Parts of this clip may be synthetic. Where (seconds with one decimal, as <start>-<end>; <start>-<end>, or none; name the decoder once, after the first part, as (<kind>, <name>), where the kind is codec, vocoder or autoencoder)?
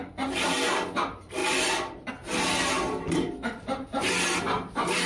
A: none